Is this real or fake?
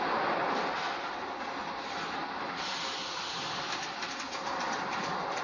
real